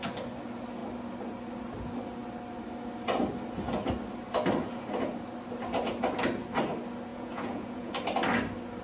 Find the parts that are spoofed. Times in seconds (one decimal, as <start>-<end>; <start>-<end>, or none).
7.1-7.9